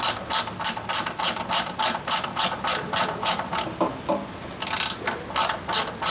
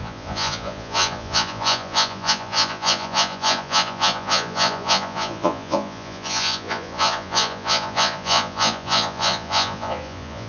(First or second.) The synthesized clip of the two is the second